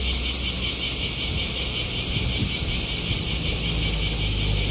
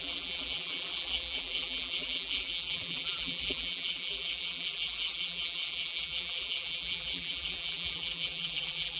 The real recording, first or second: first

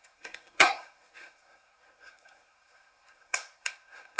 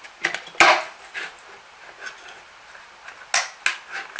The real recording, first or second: second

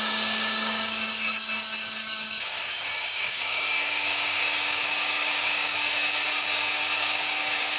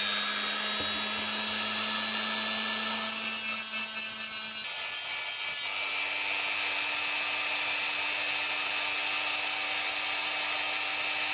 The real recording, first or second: second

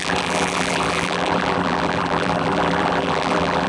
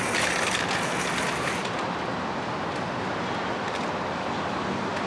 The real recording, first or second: second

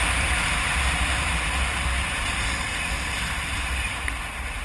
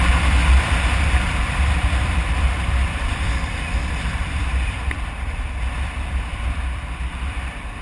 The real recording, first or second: first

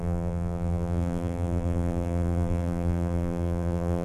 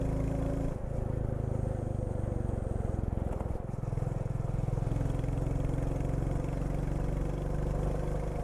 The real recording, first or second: second